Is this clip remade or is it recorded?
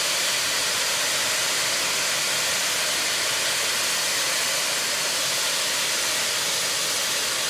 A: recorded